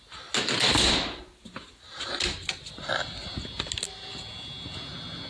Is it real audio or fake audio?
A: real